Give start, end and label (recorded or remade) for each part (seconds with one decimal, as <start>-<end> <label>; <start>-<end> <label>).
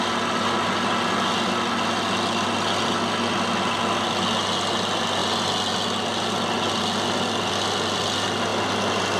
0.0-9.2 recorded